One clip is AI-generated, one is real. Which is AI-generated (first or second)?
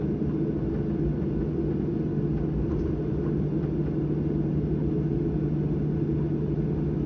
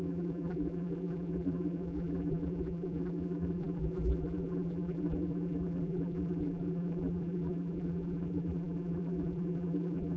second